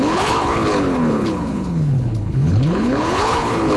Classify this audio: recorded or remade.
remade